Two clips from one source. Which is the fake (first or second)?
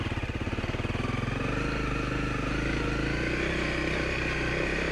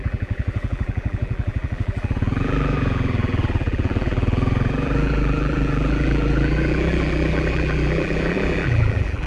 second